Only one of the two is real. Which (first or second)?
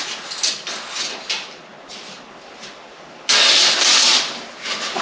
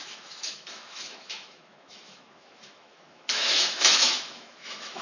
first